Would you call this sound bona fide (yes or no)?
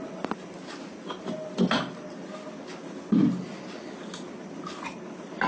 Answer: yes